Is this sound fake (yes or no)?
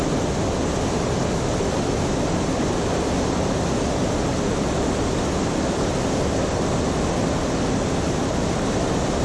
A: no